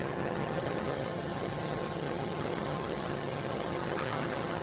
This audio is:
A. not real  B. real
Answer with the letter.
A